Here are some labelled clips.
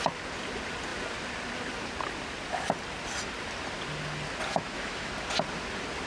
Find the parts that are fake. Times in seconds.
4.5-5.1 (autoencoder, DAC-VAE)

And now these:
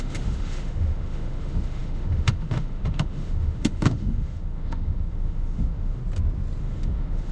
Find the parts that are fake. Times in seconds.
0.0-6.0 (autoencoder, DAC-VAE); 6.6-7.3

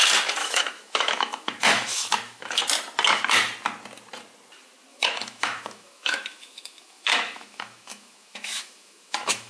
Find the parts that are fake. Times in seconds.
0.4-2.6 (autoencoder, DAC-VAE); 4.9-9.5

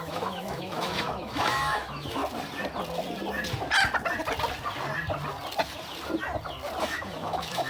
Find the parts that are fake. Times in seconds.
0.0-2.2 (autoencoder, DAC-VAE); 6.8-7.7

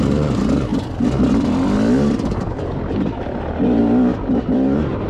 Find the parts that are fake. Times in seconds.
none

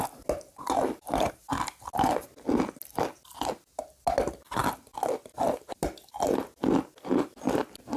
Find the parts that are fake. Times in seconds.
none